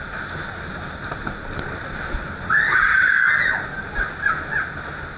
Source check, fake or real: real